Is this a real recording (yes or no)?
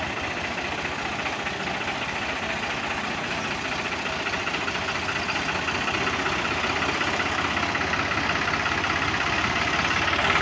yes